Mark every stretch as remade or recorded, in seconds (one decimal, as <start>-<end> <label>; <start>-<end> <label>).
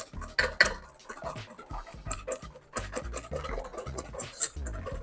0.0-3.7 recorded; 3.7-4.4 remade; 4.4-5.0 recorded